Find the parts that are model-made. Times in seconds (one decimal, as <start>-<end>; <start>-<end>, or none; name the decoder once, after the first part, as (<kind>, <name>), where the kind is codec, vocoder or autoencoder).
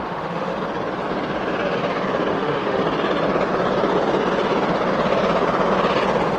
0.0-0.5 (autoencoder, DAC-VAE); 2.3-2.8